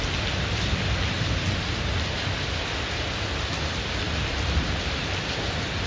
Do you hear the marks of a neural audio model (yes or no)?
no